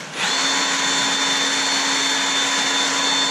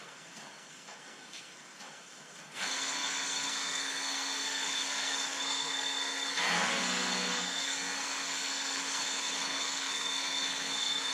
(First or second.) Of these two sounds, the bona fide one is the first